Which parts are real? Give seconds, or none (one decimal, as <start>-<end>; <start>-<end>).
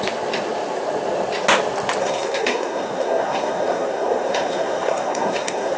0.0-2.0